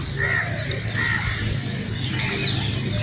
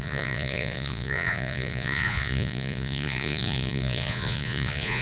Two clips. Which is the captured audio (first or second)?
first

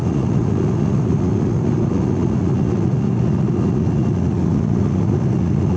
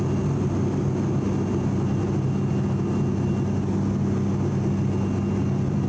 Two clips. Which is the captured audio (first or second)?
second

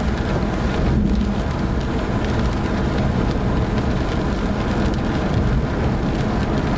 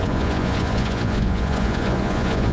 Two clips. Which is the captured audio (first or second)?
first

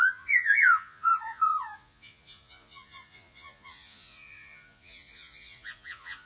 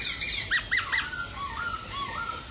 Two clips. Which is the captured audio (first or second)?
second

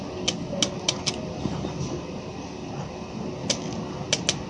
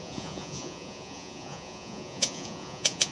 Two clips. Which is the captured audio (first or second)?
first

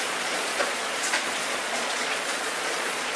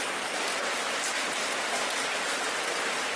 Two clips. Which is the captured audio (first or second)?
second